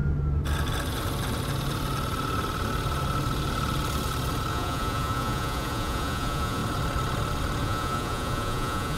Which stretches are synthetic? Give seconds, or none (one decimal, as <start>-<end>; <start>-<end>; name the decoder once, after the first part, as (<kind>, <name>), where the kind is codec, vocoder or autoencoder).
4.5-6.6 (vocoder, Vocos); 7.6-9.0